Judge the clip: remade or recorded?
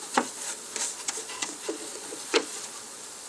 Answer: remade